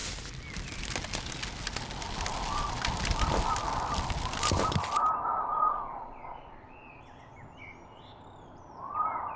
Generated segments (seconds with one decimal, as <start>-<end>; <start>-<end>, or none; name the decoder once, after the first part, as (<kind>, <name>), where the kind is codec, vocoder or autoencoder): 5.5-6.9 (vocoder, Vocos)